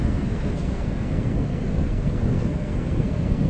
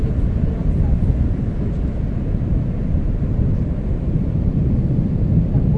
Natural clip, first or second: second